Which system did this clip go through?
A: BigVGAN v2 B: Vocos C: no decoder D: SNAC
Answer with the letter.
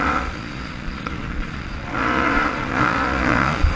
B